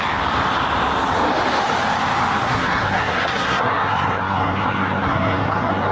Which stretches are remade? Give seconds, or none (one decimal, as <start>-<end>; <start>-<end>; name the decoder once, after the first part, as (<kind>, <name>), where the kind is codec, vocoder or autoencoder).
2.4-5.9 (codec, SNAC)

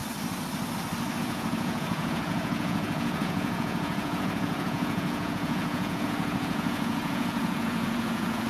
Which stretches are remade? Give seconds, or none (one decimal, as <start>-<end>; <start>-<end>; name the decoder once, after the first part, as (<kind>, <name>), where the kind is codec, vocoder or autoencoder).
1.2-8.5 (vocoder, Vocos)

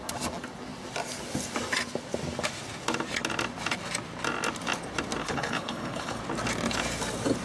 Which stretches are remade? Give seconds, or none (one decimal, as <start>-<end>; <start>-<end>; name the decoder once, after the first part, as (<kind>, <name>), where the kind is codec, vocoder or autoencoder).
5.2-6.2 (codec, HILCodec)

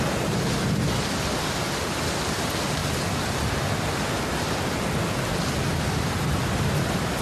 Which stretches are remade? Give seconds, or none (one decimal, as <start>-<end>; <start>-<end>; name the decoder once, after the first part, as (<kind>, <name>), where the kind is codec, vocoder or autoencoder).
none

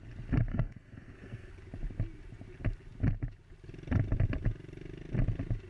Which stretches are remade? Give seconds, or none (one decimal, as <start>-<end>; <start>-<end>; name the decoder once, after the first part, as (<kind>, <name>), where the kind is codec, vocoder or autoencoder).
0.5-1.5 (codec, SNAC)